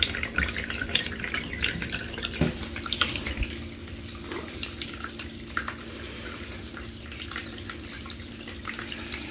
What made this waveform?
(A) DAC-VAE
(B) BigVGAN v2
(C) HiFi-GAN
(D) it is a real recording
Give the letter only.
B